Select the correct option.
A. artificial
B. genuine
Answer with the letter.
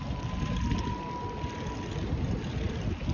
B